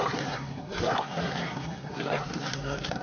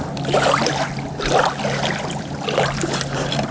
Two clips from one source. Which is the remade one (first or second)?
first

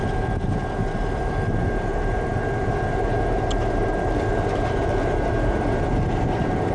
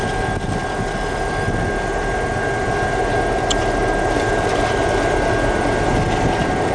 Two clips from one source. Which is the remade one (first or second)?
first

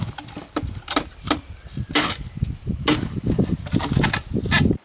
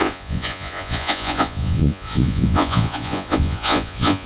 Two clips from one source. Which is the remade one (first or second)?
second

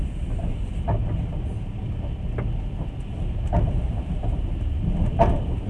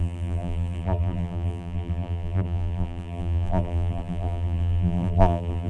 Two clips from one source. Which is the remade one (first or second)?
second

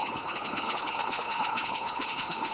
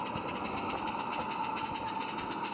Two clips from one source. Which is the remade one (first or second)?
first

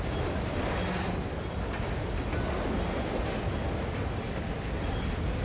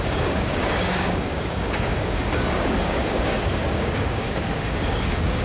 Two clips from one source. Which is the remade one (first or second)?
second